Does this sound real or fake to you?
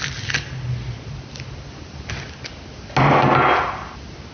real